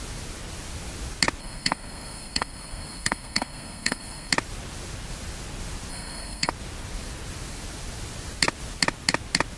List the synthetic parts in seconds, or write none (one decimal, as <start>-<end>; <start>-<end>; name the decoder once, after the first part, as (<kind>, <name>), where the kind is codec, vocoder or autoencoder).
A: 1.4-4.3 (codec, SNAC); 5.9-6.5